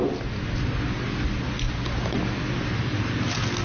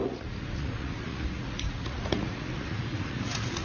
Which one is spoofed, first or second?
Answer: second